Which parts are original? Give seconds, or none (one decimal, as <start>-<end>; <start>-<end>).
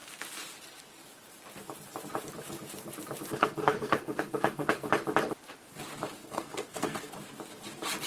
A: 0.0-3.4; 4.9-6.2; 7.1-8.1